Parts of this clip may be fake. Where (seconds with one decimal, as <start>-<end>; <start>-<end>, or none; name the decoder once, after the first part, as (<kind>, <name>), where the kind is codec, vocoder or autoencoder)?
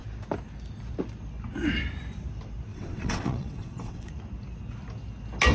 2.7-4.1 (vocoder, WaveNeXt)